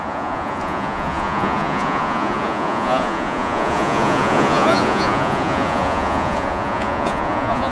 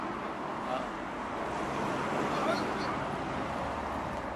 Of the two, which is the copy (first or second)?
first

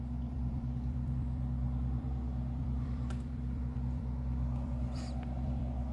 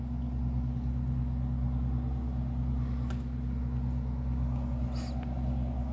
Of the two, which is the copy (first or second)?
first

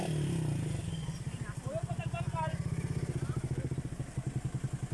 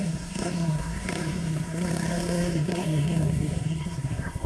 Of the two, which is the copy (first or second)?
second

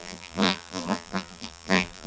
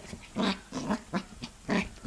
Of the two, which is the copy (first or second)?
first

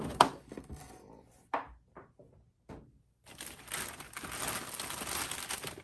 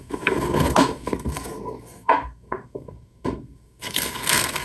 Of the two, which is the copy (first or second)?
second